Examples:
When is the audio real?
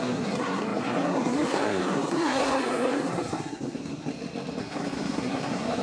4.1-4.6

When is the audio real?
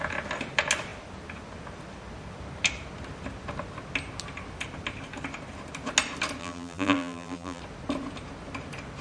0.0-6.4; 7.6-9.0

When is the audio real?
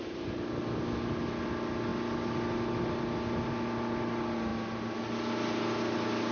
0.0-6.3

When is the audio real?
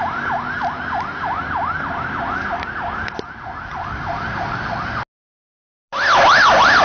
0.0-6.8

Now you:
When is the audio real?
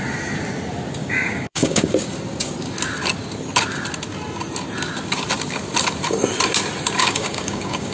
0.0-1.0; 1.9-7.0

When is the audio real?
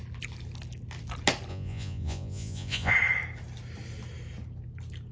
0.0-1.5; 2.9-5.1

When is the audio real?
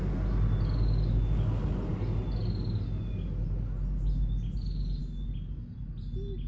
0.0-6.5